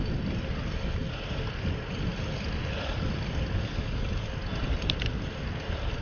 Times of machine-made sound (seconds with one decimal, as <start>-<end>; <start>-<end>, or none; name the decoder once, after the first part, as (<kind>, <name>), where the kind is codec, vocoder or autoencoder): 2.1-3.4 (vocoder, BigVGAN v2); 4.5-5.1